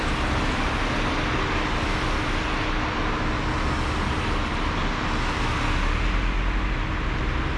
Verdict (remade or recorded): recorded